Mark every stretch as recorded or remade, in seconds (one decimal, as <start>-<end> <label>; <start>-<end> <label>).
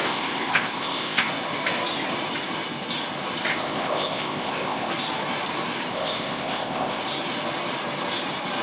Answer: 0.0-1.3 remade; 1.3-3.5 recorded; 3.5-4.9 remade; 4.9-5.9 recorded; 5.9-7.0 remade; 7.0-8.6 recorded